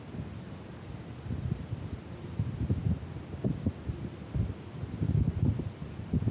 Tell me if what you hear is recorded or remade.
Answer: recorded